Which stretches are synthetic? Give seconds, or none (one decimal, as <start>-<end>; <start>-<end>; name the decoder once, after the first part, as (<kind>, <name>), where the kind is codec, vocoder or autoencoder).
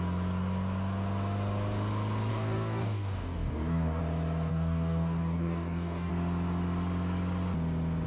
2.3-4.0 (codec, DAC); 4.5-6.1